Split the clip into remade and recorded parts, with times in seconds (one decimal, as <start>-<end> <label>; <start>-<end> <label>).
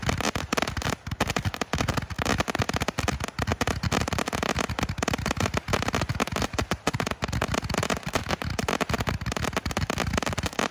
0.0-10.7 recorded